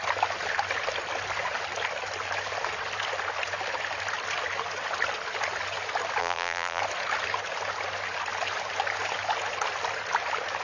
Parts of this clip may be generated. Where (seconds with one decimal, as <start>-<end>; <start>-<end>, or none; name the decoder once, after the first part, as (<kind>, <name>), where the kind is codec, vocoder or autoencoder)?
6.2-6.8 (vocoder, BigVGAN v2)